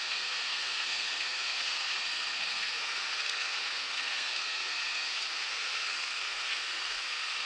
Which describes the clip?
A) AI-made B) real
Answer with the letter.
A